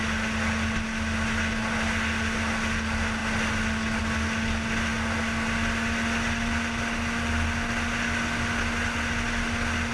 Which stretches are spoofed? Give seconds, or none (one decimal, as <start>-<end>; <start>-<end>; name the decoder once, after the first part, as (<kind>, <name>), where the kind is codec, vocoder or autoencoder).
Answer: none